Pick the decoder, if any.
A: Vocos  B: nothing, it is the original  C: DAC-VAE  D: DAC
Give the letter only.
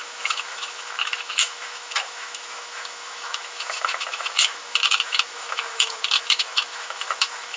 C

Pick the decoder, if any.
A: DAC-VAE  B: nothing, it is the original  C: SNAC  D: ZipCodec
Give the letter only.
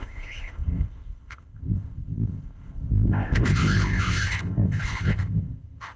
D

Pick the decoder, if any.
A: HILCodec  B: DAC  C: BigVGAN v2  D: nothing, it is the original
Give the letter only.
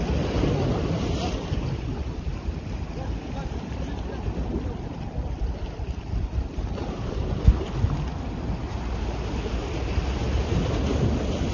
D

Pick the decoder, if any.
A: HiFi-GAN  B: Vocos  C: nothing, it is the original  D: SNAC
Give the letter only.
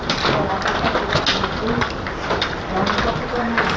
C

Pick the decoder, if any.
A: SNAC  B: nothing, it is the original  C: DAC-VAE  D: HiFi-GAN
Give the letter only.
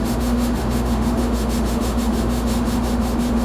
C